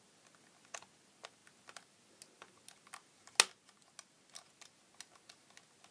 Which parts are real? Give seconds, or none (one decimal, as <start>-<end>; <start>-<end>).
0.0-5.9